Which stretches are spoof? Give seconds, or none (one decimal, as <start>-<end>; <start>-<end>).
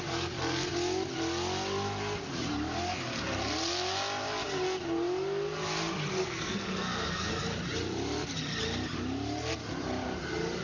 6.2-7.3